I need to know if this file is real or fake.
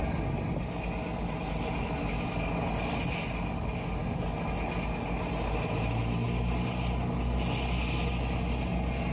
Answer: real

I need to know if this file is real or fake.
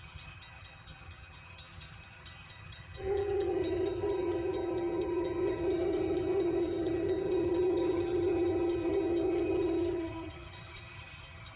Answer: fake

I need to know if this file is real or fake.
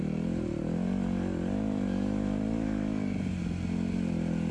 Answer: real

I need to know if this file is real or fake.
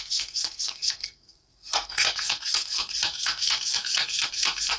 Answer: fake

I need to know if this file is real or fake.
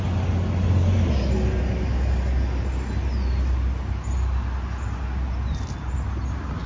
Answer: real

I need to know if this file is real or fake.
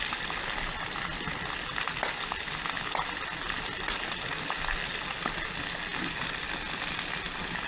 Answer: real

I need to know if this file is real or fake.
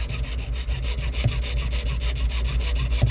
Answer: real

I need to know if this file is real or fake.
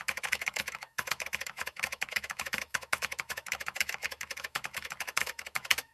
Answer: fake